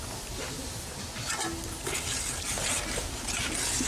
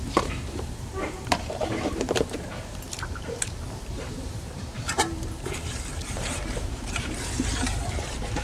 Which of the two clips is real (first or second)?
first